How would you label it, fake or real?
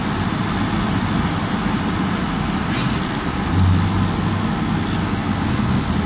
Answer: real